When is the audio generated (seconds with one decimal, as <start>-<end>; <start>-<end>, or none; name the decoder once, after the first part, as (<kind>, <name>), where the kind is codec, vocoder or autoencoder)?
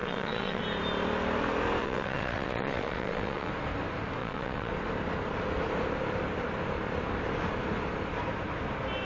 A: 0.0-0.6 (vocoder, WaveNeXt); 1.8-3.5; 4.2-4.7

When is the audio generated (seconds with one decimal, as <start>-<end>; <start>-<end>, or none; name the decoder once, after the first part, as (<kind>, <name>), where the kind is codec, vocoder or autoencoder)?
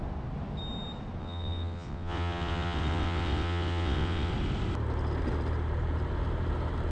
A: 1.2-4.3 (vocoder, WaveNeXt)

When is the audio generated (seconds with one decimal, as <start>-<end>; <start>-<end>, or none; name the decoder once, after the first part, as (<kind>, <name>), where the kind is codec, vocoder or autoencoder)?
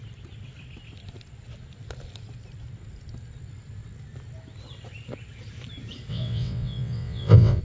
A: 6.1-7.6 (vocoder, WaveNeXt)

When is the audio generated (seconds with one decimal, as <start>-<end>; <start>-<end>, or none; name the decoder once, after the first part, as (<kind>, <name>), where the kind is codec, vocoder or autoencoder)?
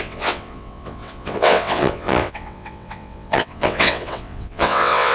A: 0.0-5.1 (vocoder, WaveNeXt)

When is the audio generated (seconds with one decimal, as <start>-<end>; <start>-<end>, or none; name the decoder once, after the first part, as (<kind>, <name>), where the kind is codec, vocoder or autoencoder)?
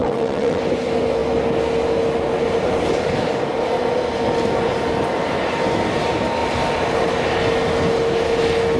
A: 0.0-0.6 (vocoder, WaveNeXt)